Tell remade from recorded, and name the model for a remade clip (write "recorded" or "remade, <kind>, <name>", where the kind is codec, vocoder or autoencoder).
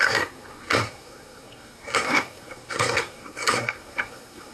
remade, codec, SNAC